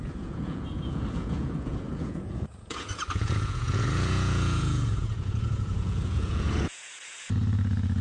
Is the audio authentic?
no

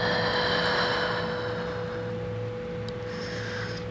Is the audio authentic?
yes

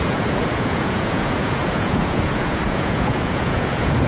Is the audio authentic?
no